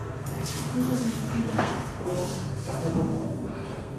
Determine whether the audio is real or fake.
fake